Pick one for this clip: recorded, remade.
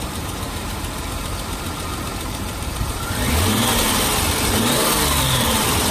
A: remade